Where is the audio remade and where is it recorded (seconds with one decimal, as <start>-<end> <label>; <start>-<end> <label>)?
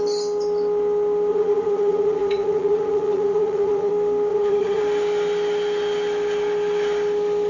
0.0-1.3 recorded; 1.3-3.9 remade; 3.9-4.3 recorded; 4.3-4.8 remade; 4.8-7.5 recorded